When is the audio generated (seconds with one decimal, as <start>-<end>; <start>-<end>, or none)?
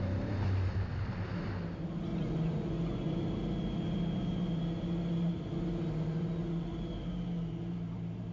2.1-3.2